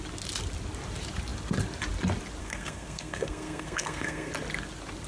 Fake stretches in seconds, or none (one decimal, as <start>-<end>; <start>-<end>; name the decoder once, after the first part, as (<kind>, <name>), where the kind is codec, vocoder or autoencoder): 2.4-4.3 (codec, SNAC)